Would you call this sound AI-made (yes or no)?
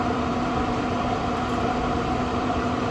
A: yes